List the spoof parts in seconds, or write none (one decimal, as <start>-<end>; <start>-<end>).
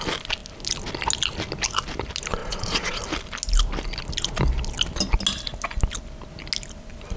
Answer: 2.4-3.0